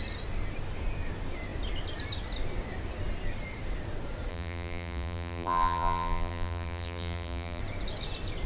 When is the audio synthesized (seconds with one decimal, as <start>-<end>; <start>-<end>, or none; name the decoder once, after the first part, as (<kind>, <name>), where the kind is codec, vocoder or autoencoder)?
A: 4.3-7.6 (vocoder, BigVGAN v2)